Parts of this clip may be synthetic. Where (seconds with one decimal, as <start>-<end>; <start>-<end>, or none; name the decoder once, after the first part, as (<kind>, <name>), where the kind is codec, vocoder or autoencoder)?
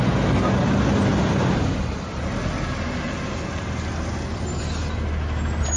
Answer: none